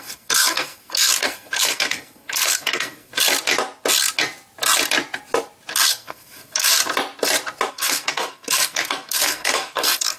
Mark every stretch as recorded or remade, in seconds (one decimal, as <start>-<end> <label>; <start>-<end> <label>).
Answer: 0.0-3.1 remade; 3.1-5.9 recorded; 5.9-6.8 remade; 6.8-7.7 recorded; 7.7-10.2 remade